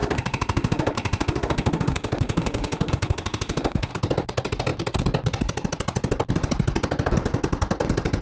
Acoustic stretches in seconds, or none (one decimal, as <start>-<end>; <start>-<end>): 3.9-8.2